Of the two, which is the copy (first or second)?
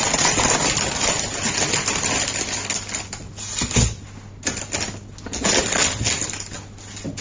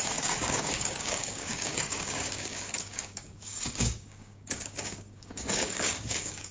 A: second